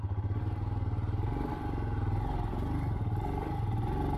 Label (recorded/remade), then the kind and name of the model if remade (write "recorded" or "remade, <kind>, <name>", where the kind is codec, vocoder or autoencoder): recorded